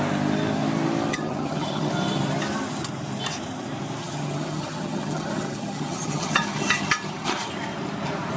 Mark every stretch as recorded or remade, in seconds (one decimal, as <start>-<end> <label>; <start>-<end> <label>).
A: 0.0-1.1 recorded; 1.1-1.9 remade; 1.9-4.0 recorded; 4.0-7.5 remade; 7.5-8.4 recorded